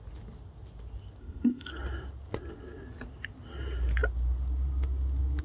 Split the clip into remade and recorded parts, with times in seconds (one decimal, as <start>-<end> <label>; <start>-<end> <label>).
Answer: 0.0-1.2 recorded; 1.2-1.7 remade; 1.7-5.4 recorded